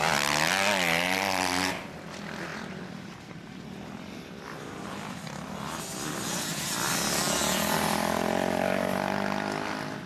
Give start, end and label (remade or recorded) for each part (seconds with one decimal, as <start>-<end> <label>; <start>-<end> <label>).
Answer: 0.0-2.5 recorded; 2.5-6.9 remade; 6.9-10.1 recorded